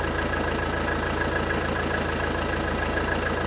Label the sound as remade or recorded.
recorded